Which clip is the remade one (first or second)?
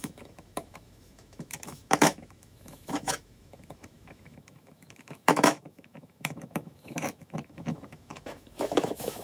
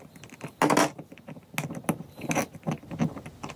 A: first